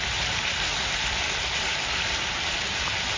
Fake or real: real